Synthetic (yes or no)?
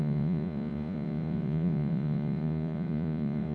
yes